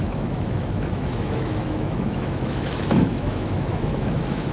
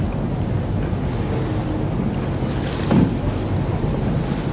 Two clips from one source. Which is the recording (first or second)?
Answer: second